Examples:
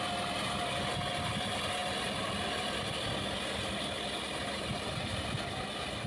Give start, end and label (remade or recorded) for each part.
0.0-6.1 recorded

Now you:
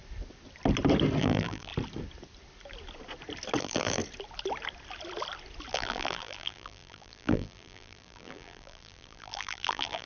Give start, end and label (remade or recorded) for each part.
0.0-1.2 recorded; 1.2-1.7 remade; 1.7-3.6 recorded; 3.6-4.0 remade; 4.0-5.7 recorded; 5.7-10.1 remade

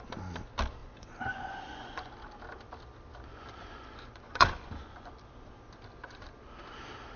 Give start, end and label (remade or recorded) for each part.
0.0-0.8 recorded; 0.8-2.1 remade; 2.1-3.3 recorded; 3.3-5.1 remade; 5.1-7.2 recorded

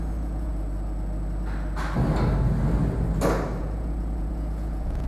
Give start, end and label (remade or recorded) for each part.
0.0-0.5 remade; 0.5-3.6 recorded; 3.6-5.1 remade

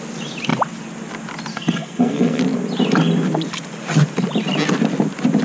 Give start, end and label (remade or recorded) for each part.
0.0-1.5 recorded; 1.5-2.4 remade; 2.4-5.4 recorded

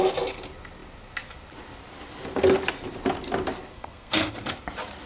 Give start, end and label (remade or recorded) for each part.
0.0-3.7 recorded; 3.7-4.3 remade; 4.3-5.1 recorded